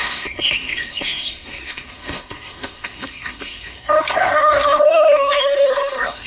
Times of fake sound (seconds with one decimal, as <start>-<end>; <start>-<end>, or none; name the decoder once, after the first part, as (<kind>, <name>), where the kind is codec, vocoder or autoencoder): 0.0-6.3 (codec, SNAC)